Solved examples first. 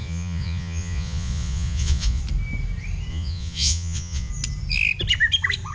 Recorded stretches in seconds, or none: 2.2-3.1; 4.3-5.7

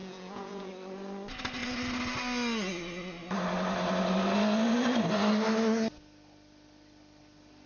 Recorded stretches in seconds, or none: 0.7-7.7

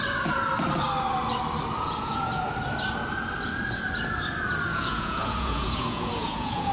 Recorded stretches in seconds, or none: 0.0-1.8; 2.4-4.7

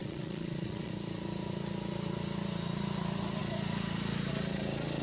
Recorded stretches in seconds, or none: 0.9-5.0

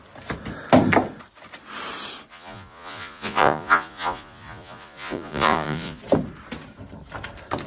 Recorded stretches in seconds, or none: 0.0-2.3; 6.0-7.7

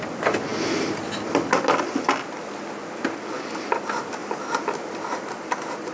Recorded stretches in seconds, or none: 0.0-5.9

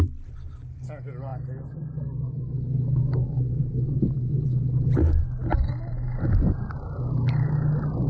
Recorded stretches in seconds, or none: 0.0-8.1